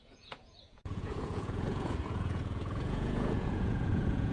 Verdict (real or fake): fake